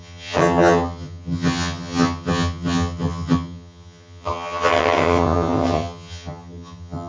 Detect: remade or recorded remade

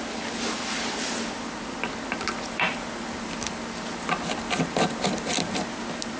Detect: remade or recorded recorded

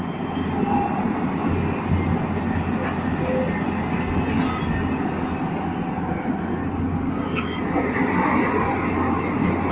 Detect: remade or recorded recorded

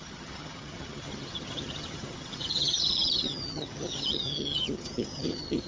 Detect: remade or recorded remade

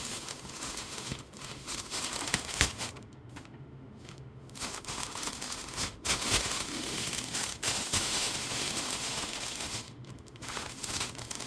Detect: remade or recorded remade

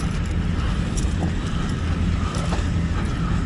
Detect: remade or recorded recorded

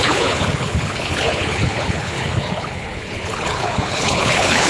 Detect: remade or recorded remade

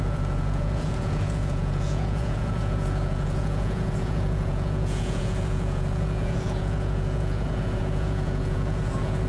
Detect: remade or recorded remade